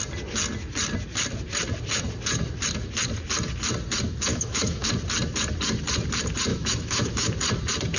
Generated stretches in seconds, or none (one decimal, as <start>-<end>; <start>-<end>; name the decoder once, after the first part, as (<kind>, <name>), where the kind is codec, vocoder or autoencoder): 4.3-4.9 (autoencoder, DAC-VAE); 6.5-7.3